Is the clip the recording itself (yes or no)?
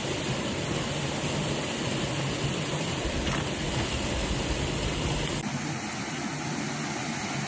yes